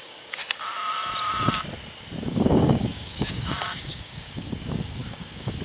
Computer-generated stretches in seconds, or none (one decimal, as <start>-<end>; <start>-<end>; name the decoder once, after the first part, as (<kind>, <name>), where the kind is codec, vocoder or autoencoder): 0.0-0.4 (codec, DAC); 2.2-5.6